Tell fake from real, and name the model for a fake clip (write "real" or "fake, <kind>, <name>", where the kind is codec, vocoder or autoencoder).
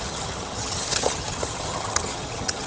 fake, vocoder, HiFi-GAN